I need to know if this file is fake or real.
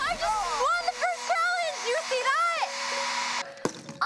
real